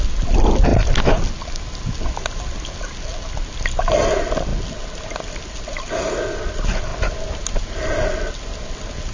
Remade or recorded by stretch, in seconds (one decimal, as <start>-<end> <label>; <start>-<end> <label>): 0.0-9.1 recorded